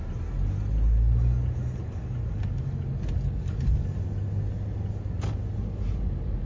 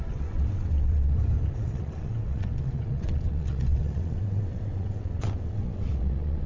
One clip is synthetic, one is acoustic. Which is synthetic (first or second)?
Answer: second